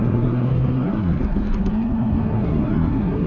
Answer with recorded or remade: remade